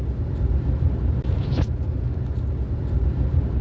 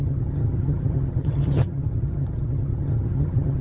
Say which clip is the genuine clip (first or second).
first